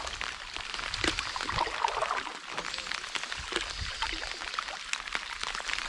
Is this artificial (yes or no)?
no